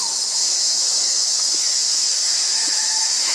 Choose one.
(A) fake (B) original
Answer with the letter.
A